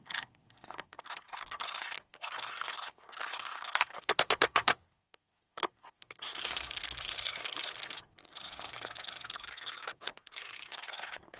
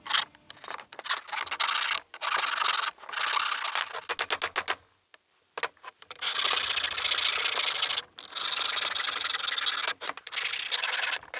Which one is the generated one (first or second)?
first